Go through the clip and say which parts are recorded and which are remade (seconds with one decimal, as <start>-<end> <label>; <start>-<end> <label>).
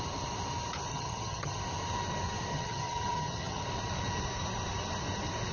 0.0-0.9 recorded; 0.9-1.6 remade; 1.6-2.5 recorded; 2.5-3.6 remade; 3.6-5.5 recorded